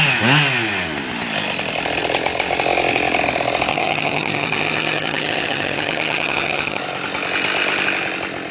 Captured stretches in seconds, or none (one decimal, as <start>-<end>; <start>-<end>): 0.0-3.7; 6.8-8.5